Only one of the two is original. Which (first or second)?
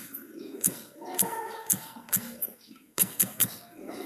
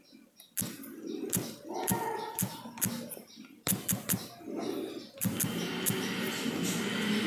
second